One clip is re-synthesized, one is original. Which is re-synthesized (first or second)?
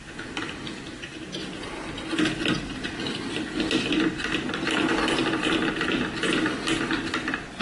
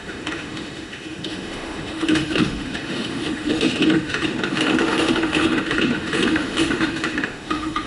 second